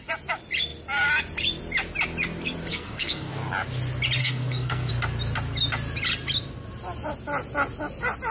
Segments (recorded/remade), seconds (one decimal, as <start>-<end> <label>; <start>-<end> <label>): 0.0-2.7 recorded; 2.7-3.3 remade; 3.3-4.2 recorded; 4.2-4.9 remade; 4.9-8.3 recorded